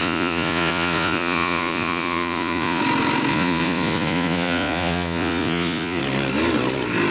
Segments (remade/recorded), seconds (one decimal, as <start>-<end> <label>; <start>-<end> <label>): 0.0-2.8 remade; 2.8-3.3 recorded; 3.3-6.0 remade; 6.0-7.1 recorded